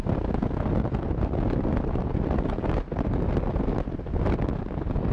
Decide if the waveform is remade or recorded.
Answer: recorded